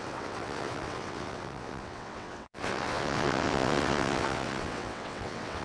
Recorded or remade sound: remade